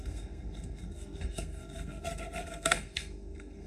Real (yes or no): no